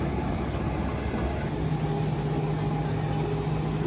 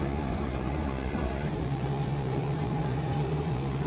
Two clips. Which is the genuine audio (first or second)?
first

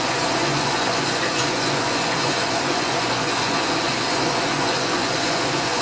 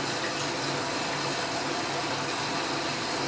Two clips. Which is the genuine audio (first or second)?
second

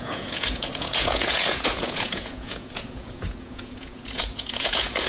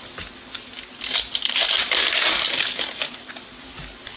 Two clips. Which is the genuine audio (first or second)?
second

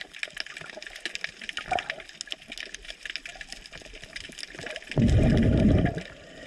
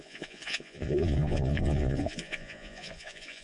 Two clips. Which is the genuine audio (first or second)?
first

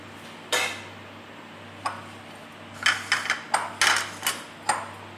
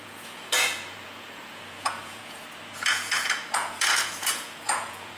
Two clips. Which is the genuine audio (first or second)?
first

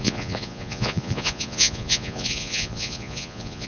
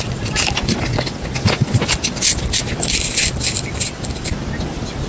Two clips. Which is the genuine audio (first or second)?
second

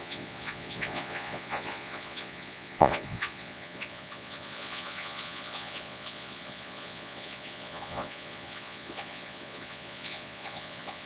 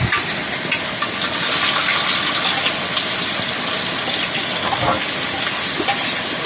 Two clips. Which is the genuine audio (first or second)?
second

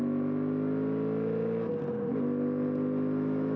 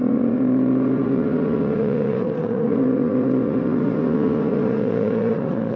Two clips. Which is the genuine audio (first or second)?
first